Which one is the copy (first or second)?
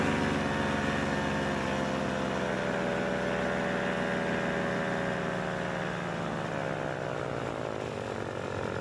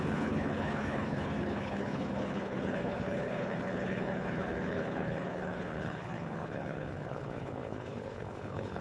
second